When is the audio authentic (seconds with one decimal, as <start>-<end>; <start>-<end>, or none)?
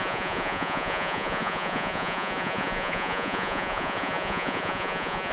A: none